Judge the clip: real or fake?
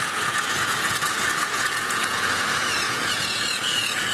fake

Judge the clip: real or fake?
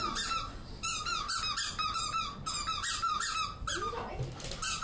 real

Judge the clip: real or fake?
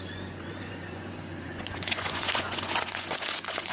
fake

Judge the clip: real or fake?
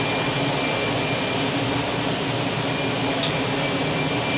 real